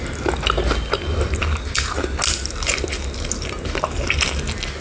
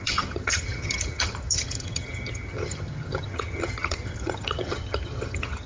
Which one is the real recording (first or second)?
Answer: first